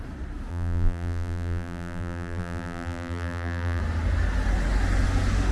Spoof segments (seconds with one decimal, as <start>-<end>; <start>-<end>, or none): 0.5-3.8